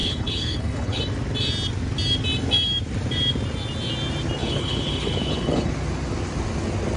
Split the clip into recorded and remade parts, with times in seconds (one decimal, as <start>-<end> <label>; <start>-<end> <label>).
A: 0.0-1.0 remade; 1.0-4.4 recorded; 4.4-5.7 remade; 5.7-7.0 recorded